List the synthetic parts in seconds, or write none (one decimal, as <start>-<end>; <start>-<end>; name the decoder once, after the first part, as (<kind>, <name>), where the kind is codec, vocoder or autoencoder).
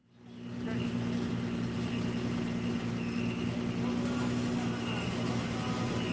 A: none